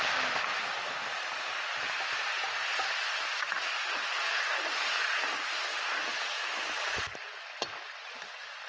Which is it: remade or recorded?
recorded